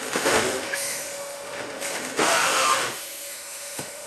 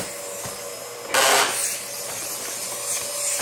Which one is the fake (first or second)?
first